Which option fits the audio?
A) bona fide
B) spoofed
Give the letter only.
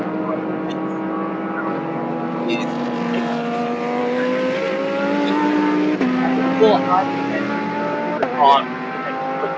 A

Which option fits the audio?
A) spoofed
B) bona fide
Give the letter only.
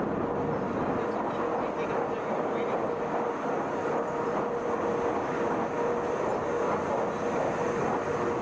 B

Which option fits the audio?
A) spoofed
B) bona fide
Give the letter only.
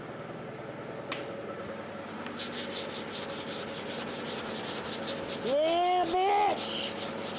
B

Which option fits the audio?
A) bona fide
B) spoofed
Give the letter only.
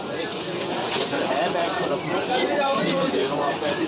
B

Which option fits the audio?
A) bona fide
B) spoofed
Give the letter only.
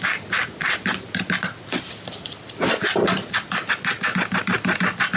A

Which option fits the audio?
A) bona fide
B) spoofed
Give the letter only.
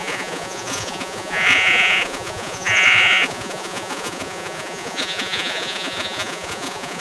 B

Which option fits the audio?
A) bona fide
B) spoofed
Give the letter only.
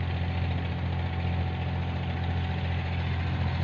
A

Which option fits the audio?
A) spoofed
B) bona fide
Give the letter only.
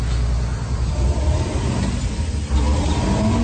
B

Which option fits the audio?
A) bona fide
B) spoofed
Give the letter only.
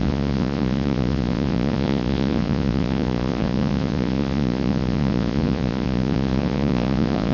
B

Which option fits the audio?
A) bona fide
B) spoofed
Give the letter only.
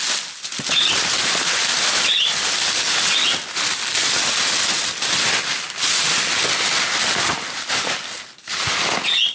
A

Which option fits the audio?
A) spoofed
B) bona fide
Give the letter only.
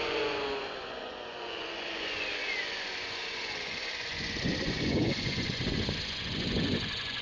A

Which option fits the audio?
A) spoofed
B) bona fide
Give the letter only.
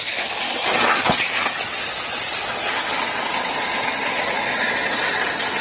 B